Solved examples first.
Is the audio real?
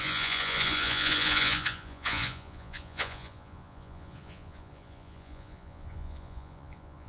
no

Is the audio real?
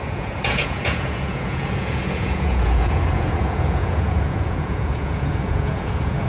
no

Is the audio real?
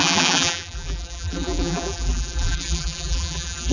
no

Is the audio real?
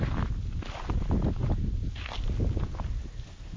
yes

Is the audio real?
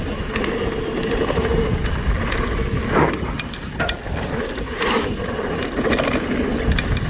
yes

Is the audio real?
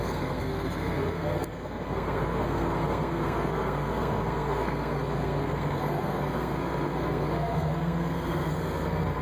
no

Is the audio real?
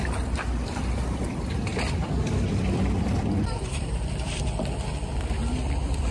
no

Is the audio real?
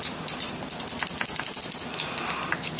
yes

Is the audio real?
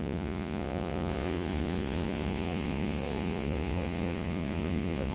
no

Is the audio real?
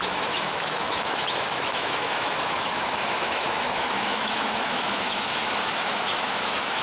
no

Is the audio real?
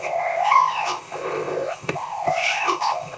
no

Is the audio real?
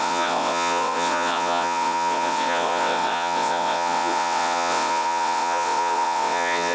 no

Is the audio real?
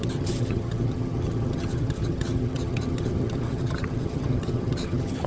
no